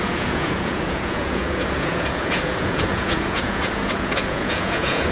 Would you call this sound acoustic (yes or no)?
no